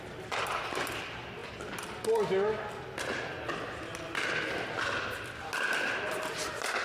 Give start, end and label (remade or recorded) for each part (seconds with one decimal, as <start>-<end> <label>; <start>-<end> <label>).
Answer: 0.0-6.8 recorded